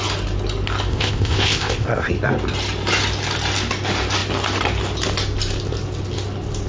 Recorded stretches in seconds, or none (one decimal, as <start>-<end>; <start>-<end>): 0.0-0.9; 2.1-6.7